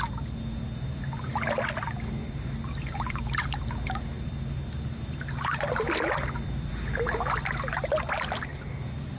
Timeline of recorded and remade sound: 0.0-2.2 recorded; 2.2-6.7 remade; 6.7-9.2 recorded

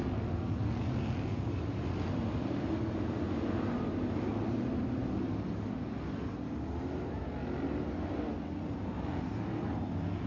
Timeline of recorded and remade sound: 0.0-10.3 recorded

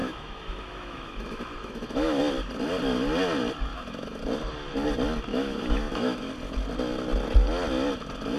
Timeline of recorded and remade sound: 0.0-2.2 remade; 2.2-3.7 recorded; 3.7-4.2 remade; 4.2-5.3 recorded; 5.3-6.3 remade; 6.3-8.4 recorded

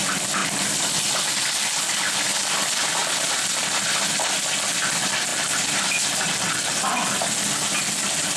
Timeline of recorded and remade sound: 0.0-8.4 recorded

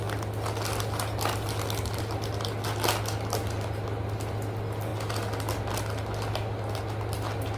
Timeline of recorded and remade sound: 0.0-7.6 recorded

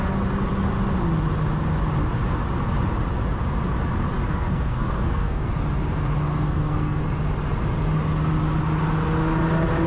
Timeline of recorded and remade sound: 0.0-4.2 recorded; 4.2-5.5 remade; 5.5-6.3 recorded; 6.3-7.0 remade; 7.0-9.9 recorded

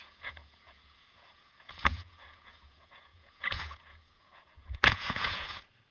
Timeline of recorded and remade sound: 0.0-5.9 remade